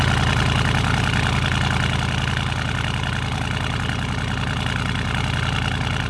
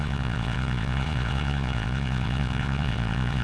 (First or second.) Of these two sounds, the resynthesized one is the second